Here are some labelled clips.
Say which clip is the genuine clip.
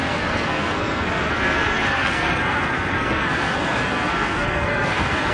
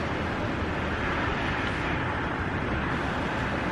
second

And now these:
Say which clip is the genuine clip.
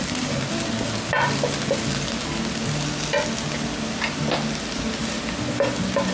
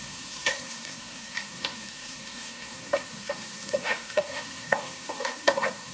first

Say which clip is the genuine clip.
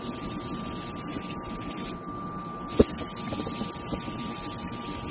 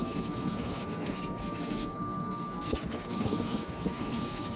first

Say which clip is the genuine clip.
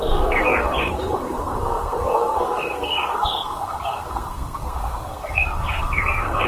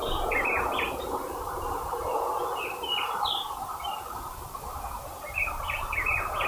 second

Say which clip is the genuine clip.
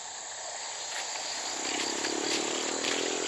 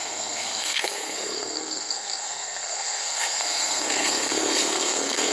first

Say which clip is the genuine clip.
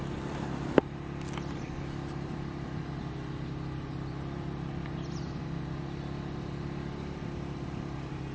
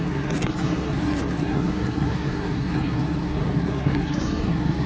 first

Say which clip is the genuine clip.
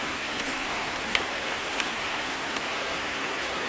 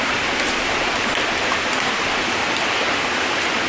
second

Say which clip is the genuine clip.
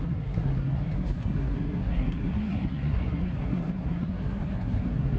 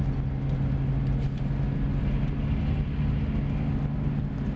second